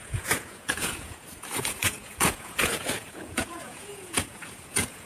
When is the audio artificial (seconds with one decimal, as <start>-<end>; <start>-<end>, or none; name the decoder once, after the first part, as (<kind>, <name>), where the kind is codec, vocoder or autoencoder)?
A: 0.0-5.1 (vocoder, Vocos)